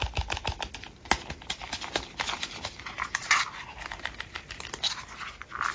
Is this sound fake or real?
real